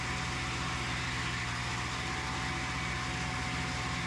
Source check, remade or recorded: recorded